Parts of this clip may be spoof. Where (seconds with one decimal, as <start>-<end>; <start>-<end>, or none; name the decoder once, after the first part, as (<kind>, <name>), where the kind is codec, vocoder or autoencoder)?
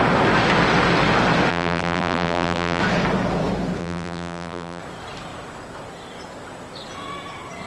1.5-2.8 (vocoder, BigVGAN v2); 3.8-4.8